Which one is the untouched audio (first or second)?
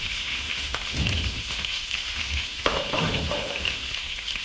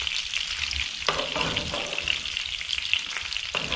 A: second